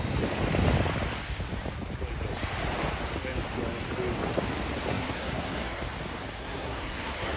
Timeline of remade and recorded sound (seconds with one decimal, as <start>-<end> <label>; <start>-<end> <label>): 0.0-4.9 recorded; 4.9-5.8 remade; 5.8-6.4 recorded; 6.4-7.4 remade